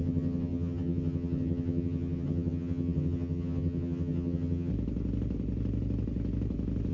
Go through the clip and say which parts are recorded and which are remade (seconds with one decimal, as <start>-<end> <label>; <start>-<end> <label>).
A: 0.0-4.7 remade; 4.7-6.9 recorded